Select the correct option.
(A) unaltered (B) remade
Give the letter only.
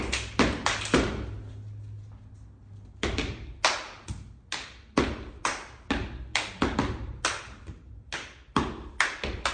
A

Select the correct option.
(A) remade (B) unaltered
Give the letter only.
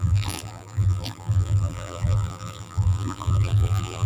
A